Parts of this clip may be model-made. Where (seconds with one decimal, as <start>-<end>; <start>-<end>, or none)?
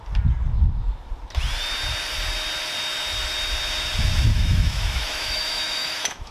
4.3-6.3